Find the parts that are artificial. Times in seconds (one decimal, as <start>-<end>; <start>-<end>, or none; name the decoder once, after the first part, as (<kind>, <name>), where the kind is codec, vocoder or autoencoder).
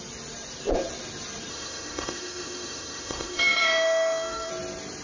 1.5-4.5 (autoencoder, DAC-VAE)